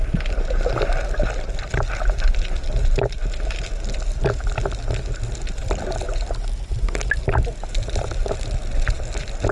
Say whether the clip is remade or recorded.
recorded